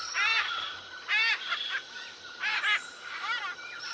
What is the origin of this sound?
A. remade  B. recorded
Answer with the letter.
B